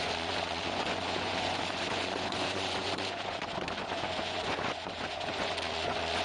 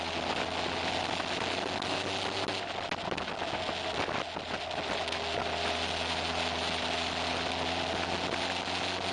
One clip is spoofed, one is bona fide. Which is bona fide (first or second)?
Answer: second